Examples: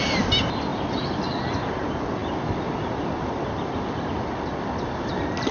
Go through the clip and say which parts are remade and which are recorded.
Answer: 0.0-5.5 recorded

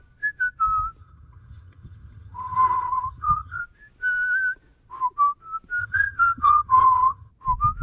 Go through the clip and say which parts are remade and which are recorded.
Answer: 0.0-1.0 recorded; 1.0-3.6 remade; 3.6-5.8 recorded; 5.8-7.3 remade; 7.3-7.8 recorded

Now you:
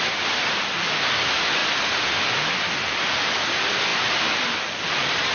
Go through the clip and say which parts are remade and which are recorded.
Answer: 0.0-5.3 recorded